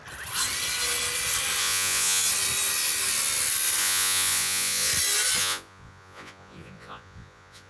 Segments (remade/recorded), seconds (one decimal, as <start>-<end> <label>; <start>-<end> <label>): 0.0-1.6 recorded; 1.6-2.2 remade; 2.2-3.8 recorded; 3.8-4.9 remade; 4.9-5.4 recorded; 5.4-7.7 remade